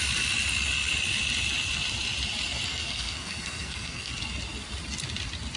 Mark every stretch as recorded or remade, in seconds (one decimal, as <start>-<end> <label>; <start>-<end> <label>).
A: 0.0-2.7 recorded; 2.7-4.1 remade; 4.1-5.6 recorded